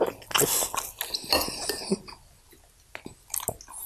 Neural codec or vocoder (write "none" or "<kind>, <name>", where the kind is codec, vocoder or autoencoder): none